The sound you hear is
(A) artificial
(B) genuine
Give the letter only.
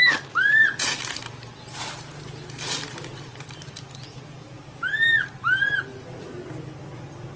B